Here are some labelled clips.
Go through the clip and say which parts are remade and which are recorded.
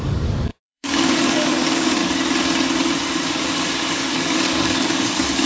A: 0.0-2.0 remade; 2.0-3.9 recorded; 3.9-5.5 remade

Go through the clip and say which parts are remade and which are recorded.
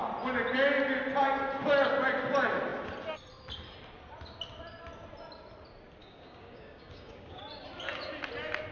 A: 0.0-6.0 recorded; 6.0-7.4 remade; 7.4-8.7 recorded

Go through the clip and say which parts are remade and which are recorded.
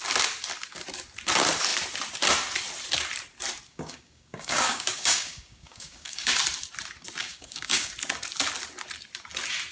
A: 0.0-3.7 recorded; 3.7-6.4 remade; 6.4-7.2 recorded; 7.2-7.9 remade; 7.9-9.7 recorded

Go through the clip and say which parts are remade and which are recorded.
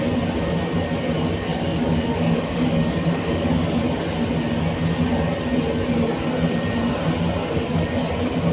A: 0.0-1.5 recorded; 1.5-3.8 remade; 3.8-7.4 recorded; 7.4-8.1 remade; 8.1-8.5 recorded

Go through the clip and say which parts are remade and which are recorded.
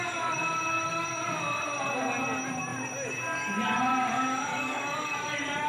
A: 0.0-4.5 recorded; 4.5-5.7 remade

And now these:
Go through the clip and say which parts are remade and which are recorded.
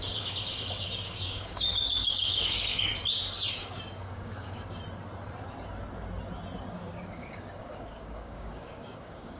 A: 0.0-2.9 remade; 2.9-3.5 recorded; 3.5-4.8 remade; 4.8-6.7 recorded; 6.7-9.4 remade